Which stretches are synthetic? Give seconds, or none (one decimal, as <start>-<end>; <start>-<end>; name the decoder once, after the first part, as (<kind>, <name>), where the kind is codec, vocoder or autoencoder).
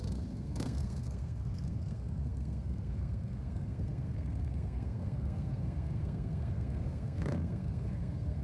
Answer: 0.0-8.4 (codec, SNAC)